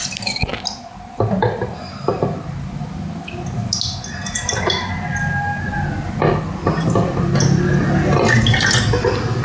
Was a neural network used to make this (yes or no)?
no